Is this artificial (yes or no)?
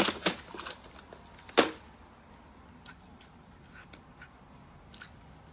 no